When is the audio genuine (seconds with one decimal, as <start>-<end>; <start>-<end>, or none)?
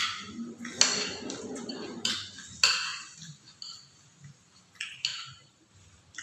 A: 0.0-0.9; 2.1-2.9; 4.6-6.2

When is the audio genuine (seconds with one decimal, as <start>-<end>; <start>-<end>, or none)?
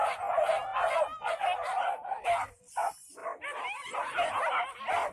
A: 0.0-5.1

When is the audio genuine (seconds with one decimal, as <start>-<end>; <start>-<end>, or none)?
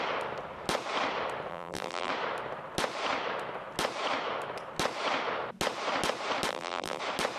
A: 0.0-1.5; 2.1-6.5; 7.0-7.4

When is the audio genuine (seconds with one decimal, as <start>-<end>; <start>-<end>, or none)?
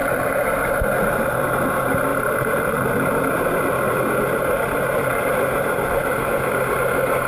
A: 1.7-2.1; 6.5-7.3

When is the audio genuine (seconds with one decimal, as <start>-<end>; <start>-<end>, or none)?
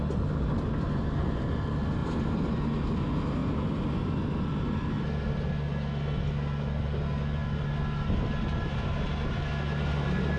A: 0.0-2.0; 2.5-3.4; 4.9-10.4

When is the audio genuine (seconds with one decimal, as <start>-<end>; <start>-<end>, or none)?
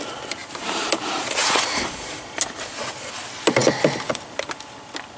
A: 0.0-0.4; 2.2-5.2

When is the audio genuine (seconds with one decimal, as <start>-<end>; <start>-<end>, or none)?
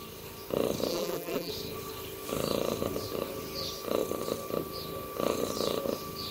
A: 0.0-0.9; 1.5-6.3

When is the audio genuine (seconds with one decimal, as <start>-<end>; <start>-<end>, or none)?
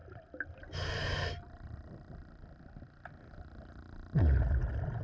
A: 0.0-5.0